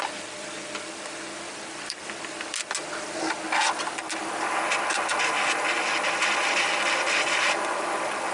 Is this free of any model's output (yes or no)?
yes